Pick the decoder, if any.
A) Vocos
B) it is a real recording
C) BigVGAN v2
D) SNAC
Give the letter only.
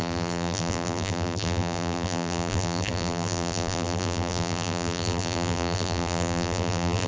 C